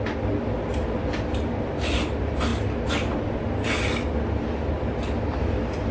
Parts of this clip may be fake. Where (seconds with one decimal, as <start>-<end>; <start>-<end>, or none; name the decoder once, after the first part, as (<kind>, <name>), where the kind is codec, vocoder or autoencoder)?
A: none